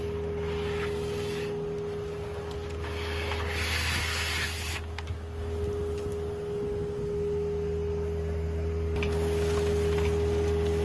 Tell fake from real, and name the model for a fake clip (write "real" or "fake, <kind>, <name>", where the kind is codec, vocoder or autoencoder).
real